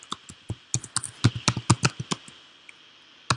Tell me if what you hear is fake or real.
real